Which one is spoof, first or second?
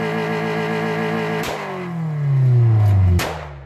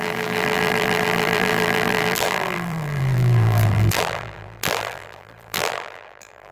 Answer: second